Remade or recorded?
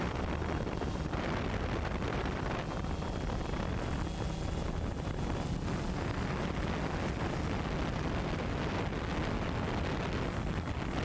recorded